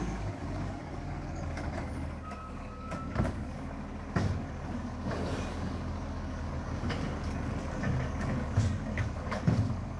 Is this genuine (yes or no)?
no